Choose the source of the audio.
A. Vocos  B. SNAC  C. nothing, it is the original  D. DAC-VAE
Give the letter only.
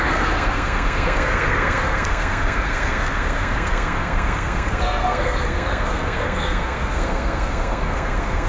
B